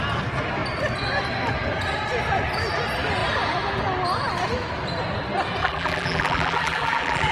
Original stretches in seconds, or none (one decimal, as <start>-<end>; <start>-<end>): 0.0-5.6